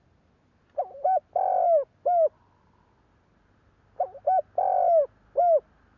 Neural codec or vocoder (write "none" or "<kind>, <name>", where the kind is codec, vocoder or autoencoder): none